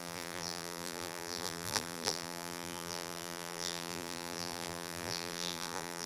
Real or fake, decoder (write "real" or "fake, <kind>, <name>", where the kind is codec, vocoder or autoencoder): fake, vocoder, BigVGAN v2